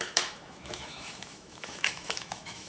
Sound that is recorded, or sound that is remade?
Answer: remade